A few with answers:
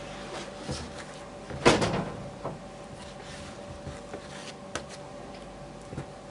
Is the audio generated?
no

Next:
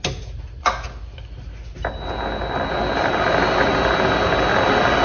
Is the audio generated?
no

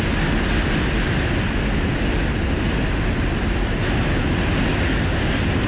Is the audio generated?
no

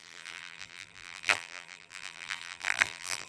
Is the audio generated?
yes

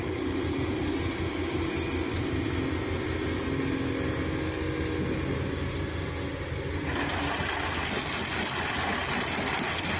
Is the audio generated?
no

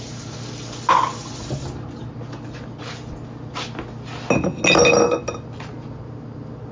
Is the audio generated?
no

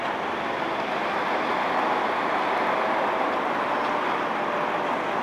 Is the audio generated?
no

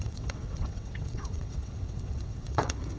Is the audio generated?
yes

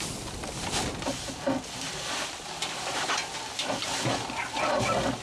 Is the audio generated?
no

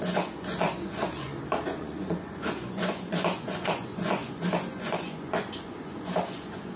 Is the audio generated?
yes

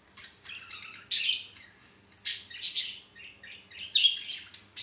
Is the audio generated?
no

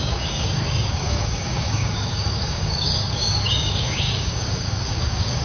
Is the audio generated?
yes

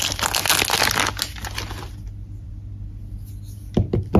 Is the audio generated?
no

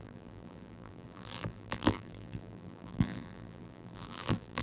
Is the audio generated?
yes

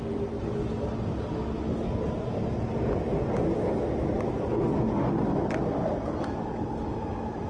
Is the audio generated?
no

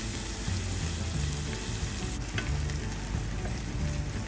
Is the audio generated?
no